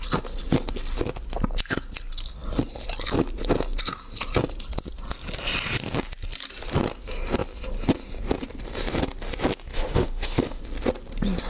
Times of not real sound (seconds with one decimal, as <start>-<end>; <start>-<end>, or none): 9.7-10.6